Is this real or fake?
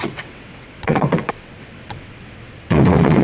fake